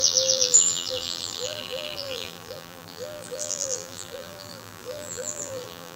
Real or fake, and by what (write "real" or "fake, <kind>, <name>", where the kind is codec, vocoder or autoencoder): fake, vocoder, BigVGAN v2